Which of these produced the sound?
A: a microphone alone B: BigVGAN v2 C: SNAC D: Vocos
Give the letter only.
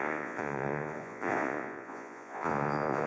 D